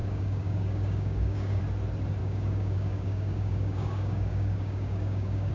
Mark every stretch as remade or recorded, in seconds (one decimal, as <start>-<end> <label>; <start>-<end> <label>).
0.0-1.6 remade; 1.6-2.2 recorded; 2.2-5.5 remade